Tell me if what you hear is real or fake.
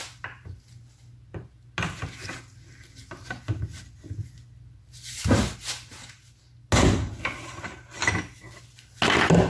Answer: real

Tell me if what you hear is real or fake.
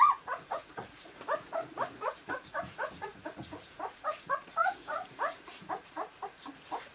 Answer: fake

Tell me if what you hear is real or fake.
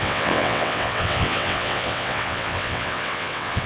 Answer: fake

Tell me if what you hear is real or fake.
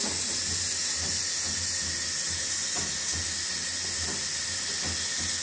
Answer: real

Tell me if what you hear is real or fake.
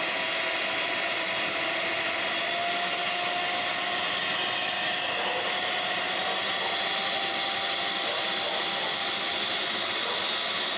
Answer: real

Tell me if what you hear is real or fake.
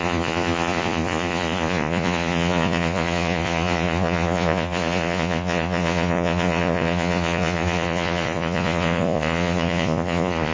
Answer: fake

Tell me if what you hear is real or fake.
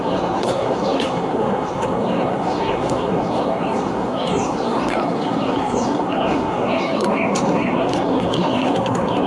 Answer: fake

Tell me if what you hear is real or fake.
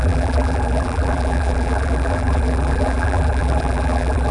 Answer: fake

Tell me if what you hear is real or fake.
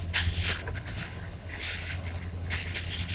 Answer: fake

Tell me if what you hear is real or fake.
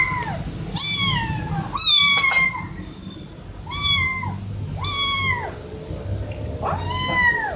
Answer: real